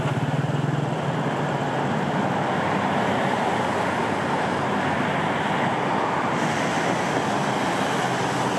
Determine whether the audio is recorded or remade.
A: recorded